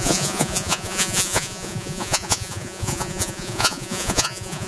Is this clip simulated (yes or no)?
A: yes